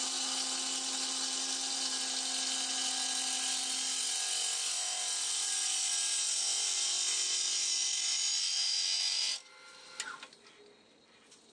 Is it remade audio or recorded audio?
recorded